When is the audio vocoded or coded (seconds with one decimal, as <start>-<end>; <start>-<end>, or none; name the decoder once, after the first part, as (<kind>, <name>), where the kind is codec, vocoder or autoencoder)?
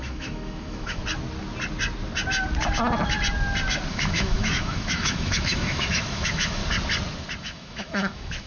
0.0-1.0 (autoencoder, DAC-VAE); 3.9-6.6; 7.4-8.5